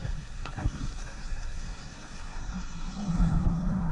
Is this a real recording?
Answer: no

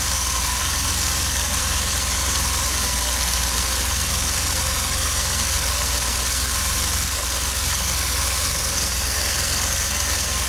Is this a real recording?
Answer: no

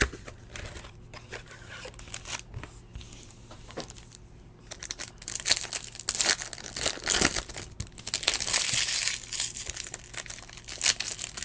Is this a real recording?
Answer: yes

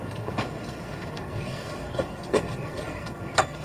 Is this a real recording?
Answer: no